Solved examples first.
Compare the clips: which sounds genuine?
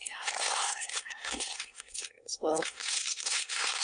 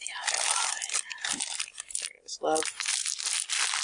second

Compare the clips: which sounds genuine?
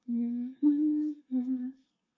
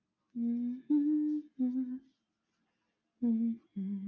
second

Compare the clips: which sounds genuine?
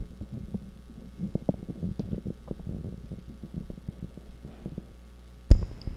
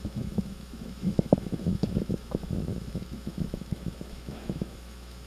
first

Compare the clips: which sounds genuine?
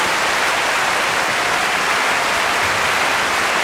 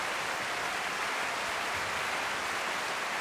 first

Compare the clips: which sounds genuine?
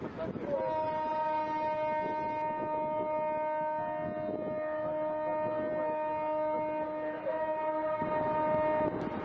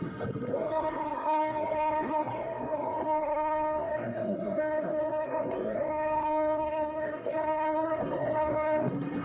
first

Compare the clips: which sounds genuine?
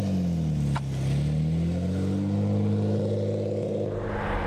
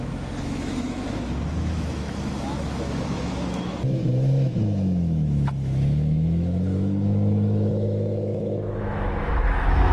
first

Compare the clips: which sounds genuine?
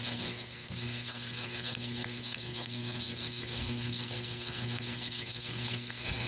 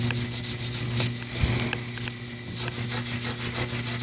second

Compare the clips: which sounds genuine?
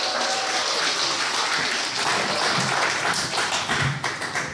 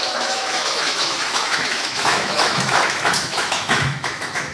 first